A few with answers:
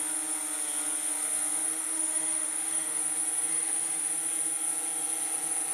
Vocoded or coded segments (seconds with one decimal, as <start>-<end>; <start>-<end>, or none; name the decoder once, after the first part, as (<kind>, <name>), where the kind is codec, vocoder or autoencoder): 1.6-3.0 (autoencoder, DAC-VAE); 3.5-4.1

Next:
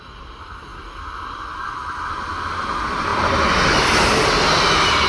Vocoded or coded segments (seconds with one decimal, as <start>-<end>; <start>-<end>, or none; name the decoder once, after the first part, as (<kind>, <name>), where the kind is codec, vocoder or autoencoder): none

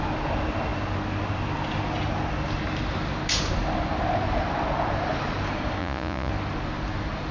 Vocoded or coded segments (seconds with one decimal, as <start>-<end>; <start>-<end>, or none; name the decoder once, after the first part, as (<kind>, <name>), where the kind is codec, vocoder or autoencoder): 5.8-6.3 (vocoder, Vocos)